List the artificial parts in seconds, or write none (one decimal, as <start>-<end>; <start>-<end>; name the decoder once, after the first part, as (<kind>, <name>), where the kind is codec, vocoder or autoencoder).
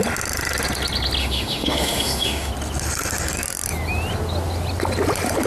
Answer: 1.2-2.5 (autoencoder, DAC-VAE)